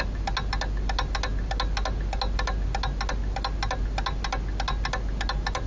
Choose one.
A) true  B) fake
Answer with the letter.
A